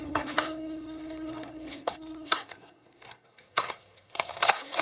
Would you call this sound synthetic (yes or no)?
yes